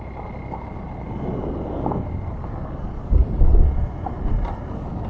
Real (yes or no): yes